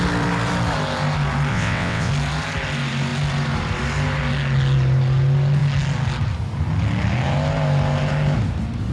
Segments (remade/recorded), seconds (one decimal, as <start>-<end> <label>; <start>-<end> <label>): 0.0-1.5 recorded; 1.5-2.1 remade; 2.1-8.9 recorded